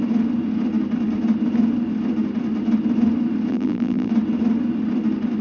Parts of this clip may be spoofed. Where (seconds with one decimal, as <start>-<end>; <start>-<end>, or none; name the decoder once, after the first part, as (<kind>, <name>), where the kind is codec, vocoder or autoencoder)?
3.5-4.1 (vocoder, BigVGAN v2)